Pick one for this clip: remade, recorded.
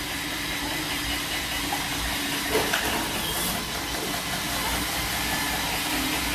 recorded